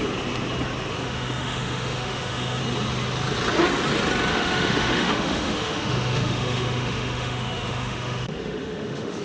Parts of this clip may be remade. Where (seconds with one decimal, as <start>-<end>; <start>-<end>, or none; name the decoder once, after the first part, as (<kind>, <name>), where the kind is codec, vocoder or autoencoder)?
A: 0.9-2.6 (autoencoder, DAC-VAE); 4.3-9.2